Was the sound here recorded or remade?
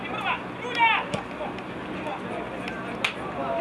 recorded